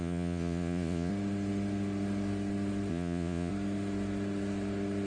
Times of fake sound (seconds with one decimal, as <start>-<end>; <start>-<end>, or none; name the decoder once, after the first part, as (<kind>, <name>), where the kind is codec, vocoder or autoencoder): 0.0-1.1 (vocoder, Vocos); 2.9-3.5